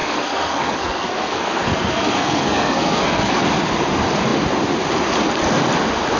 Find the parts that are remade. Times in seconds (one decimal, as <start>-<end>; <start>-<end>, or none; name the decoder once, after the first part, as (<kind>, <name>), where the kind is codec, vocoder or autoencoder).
0.0-3.5 (codec, SNAC)